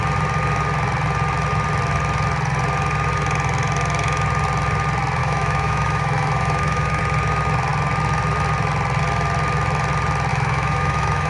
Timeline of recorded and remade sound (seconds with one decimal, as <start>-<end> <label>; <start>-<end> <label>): 0.0-5.2 recorded; 5.2-7.0 remade; 7.0-10.3 recorded; 10.3-11.3 remade